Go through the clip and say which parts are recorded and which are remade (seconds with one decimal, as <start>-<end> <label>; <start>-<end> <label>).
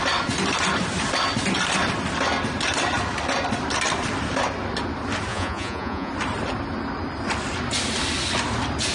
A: 0.0-5.3 recorded; 5.3-6.1 remade; 6.1-8.9 recorded